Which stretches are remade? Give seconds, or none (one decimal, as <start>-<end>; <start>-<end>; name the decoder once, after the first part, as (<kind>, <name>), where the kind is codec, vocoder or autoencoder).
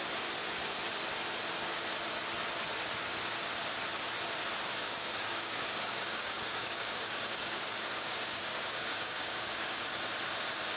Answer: 4.7-9.8 (codec, DAC)